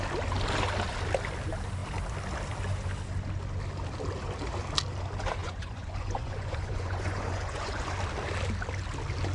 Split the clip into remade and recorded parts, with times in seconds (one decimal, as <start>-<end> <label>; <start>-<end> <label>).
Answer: 0.0-5.4 recorded; 5.4-7.9 remade; 7.9-9.3 recorded